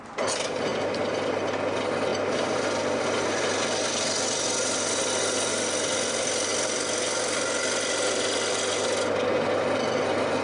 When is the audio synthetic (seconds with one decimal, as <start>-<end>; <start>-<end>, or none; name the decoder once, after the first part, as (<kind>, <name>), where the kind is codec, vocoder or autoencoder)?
0.7-1.3 (vocoder, BigVGAN v2)